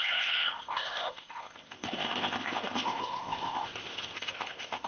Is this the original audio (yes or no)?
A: no